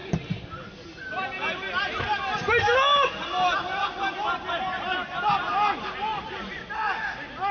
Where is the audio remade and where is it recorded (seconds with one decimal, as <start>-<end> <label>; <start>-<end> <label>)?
0.0-7.5 recorded